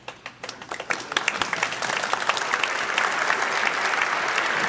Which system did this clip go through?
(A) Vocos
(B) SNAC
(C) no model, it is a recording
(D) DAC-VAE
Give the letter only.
C